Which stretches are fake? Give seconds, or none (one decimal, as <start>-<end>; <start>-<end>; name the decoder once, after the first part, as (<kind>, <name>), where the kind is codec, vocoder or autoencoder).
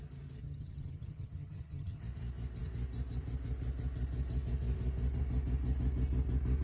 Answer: 0.4-2.0 (vocoder, HiFi-GAN)